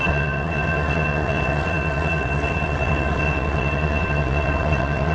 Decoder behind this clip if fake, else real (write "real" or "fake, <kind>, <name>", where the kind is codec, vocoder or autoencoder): fake, vocoder, WaveNeXt